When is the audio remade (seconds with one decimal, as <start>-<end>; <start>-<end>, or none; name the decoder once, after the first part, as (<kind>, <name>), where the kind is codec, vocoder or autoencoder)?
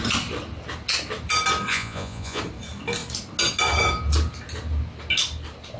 1.7-2.4 (vocoder, Vocos)